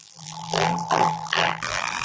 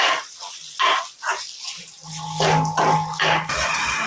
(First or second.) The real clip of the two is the second